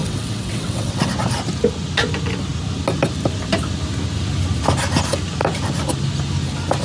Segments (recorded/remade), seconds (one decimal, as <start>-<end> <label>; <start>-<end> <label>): 0.0-1.1 remade; 1.1-6.8 recorded